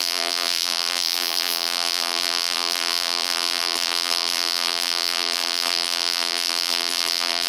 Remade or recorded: remade